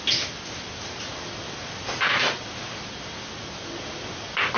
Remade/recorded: recorded